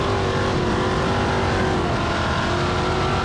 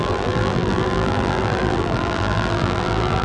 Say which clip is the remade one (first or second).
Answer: second